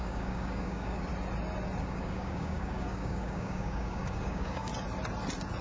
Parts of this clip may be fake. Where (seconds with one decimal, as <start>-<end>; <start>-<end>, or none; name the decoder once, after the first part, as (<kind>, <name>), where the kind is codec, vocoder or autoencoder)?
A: 0.0-1.1 (codec, DAC); 1.8-4.7